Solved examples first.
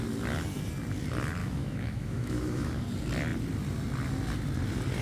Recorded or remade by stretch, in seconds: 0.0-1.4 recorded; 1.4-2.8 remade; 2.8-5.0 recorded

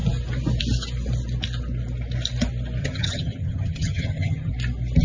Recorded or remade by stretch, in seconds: 0.0-2.8 recorded; 2.8-4.5 remade; 4.5-5.0 recorded

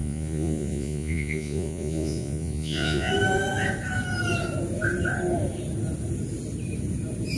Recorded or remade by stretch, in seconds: 0.0-3.1 remade; 3.1-7.4 recorded

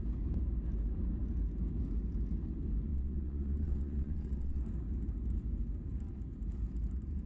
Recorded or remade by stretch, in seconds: 0.0-2.9 recorded; 2.9-4.6 remade; 4.6-7.3 recorded

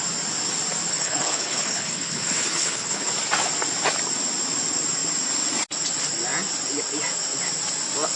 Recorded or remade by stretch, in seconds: 0.0-0.9 recorded; 0.9-3.1 remade; 3.1-8.2 recorded

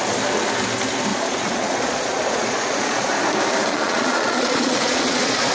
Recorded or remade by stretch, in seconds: 0.0-1.1 recorded; 1.1-3.1 remade; 3.1-3.7 recorded; 3.7-5.5 remade

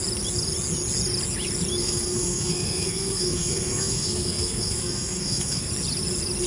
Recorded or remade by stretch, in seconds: 0.0-1.8 recorded; 1.8-5.7 remade; 5.7-6.5 recorded